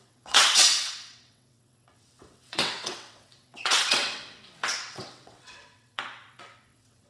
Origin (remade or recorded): remade